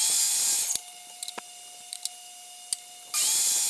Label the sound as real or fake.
real